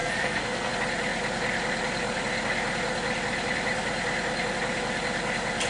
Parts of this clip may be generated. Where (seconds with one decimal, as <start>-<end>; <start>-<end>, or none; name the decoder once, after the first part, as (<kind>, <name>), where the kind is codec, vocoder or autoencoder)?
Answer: 0.0-0.7 (codec, SNAC)